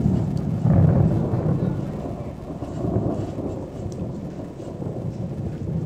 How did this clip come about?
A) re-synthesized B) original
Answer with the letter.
B